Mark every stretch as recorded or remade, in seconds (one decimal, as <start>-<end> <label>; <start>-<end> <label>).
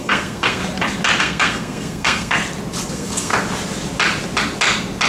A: 0.0-0.6 remade; 0.6-1.2 recorded; 1.2-2.4 remade; 2.4-2.9 recorded; 2.9-3.3 remade; 3.3-5.1 recorded